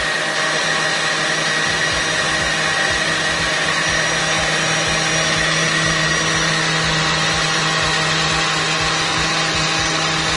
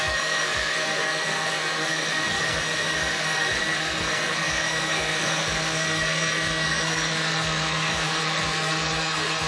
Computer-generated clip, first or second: second